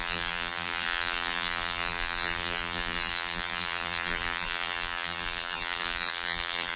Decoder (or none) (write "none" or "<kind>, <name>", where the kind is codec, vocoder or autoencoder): vocoder, BigVGAN v2